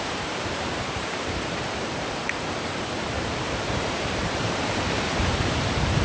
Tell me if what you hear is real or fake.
fake